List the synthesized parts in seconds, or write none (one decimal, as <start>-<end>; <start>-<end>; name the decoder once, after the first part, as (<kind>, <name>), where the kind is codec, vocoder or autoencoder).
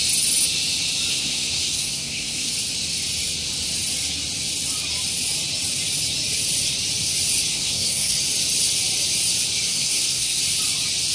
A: 1.1-2.5 (codec, SNAC); 7.5-8.2; 9.7-10.4